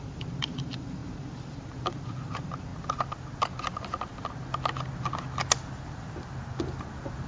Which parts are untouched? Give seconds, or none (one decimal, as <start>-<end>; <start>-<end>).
2.7-7.3